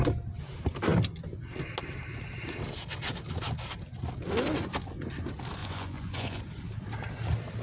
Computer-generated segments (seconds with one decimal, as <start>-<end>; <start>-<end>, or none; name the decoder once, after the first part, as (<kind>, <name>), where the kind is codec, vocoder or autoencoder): 5.6-6.4 (vocoder, Vocos)